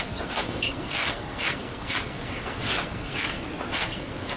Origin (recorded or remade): remade